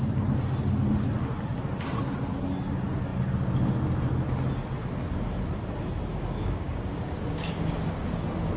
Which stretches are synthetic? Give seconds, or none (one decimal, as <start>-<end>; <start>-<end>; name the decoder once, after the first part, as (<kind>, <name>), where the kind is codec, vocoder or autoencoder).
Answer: 6.0-8.2 (codec, DAC)